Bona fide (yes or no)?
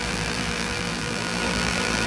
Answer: no